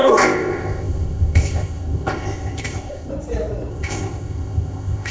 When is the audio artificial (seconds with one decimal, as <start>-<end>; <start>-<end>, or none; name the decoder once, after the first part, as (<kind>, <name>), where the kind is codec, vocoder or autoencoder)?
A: 0.0-3.1 (codec, ZipCodec); 3.7-5.1